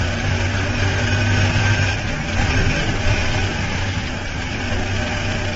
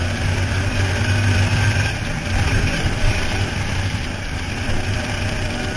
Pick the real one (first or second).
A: first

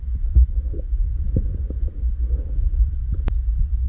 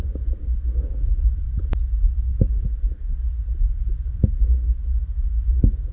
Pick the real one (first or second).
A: second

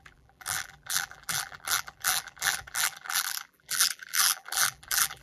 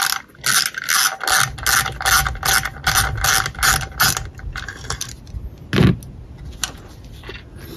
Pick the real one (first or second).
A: second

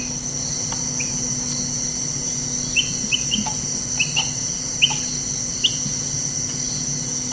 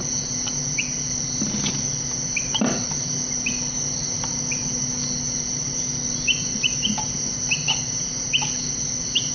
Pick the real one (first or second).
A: first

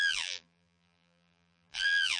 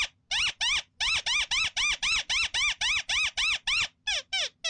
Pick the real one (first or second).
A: second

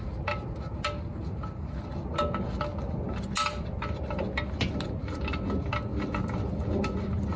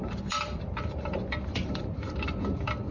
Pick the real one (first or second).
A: first